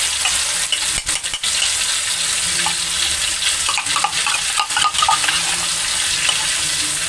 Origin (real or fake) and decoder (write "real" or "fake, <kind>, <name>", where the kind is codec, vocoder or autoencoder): real